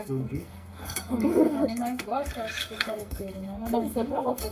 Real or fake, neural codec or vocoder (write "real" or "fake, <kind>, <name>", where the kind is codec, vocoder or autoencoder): fake, codec, SNAC